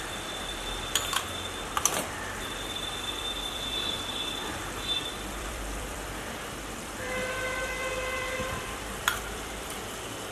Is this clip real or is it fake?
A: fake